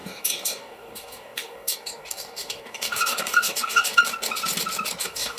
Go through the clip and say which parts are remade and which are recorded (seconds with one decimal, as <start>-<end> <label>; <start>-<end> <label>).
0.0-4.0 remade; 4.0-5.0 recorded; 5.0-5.4 remade